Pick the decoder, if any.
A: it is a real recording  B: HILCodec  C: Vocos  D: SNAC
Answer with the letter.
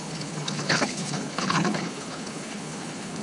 B